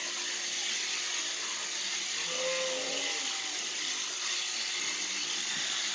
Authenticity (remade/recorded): recorded